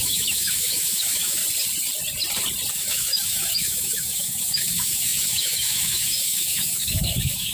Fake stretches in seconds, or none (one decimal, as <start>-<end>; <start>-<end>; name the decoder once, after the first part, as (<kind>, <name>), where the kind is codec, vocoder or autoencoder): 0.0-1.4 (autoencoder, DAC-VAE); 2.7-7.5